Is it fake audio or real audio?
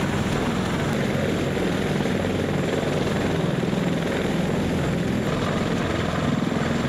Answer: real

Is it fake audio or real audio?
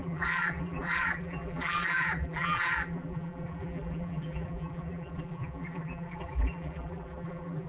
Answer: fake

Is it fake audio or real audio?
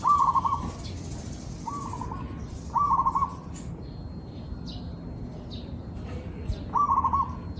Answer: real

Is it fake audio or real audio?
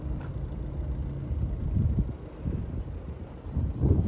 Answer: real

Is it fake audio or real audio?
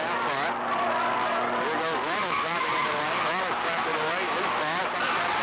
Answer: real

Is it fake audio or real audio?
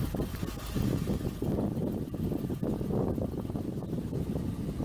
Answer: real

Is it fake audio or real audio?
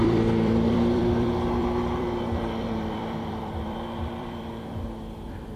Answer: fake